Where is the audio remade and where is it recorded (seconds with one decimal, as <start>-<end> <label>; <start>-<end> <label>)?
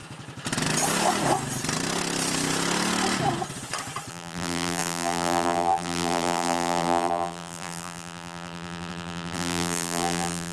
0.0-4.1 recorded; 4.1-10.5 remade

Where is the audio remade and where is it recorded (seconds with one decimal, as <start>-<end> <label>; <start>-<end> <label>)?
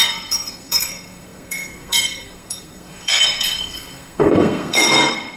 0.0-5.4 remade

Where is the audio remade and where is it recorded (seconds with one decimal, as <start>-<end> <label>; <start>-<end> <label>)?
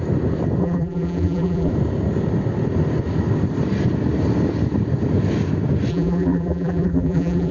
0.0-0.6 recorded; 0.6-1.7 remade; 1.7-5.9 recorded; 5.9-7.5 remade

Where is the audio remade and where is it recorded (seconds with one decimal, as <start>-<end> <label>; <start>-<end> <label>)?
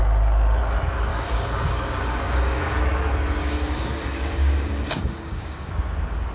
0.0-1.1 recorded; 1.1-2.8 remade; 2.8-3.4 recorded; 3.4-5.7 remade; 5.7-6.3 recorded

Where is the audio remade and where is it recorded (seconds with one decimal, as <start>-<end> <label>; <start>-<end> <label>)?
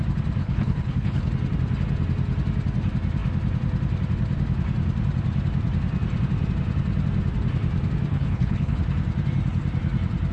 0.0-0.4 recorded; 0.4-1.3 remade; 1.3-8.1 recorded; 8.1-8.8 remade; 8.8-10.3 recorded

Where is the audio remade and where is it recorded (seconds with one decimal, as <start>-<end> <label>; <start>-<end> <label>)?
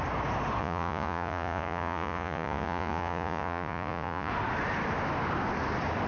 0.0-0.6 recorded; 0.6-4.3 remade; 4.3-6.1 recorded